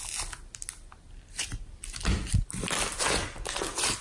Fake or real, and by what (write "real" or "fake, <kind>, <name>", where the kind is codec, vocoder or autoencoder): real